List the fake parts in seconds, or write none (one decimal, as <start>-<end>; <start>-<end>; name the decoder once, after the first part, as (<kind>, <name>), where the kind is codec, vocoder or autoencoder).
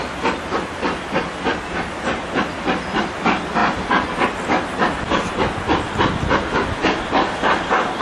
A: 1.5-2.2 (vocoder, BigVGAN v2)